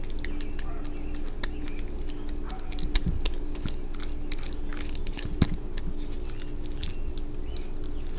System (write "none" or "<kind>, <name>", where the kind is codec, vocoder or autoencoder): none